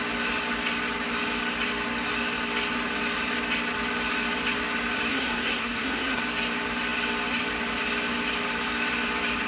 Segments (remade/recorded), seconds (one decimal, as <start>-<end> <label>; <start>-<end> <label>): 0.0-5.1 recorded; 5.1-6.2 remade; 6.2-9.5 recorded